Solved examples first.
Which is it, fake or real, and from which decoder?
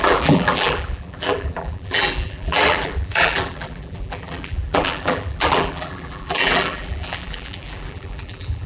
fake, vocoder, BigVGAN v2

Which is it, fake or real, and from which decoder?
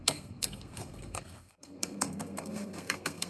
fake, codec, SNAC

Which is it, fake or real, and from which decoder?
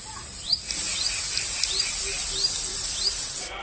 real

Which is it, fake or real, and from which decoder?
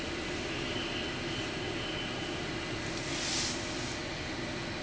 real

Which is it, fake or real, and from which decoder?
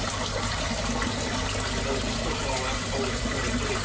real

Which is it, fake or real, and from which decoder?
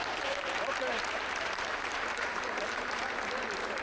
fake, vocoder, BigVGAN v2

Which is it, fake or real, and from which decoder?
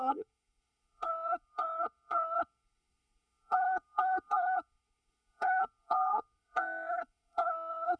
fake, codec, SNAC